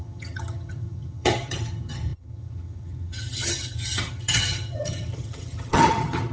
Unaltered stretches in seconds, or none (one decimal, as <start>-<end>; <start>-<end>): none